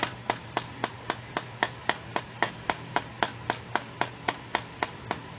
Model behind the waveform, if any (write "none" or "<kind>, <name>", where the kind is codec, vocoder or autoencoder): none